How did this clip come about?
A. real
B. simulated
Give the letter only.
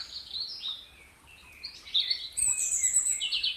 A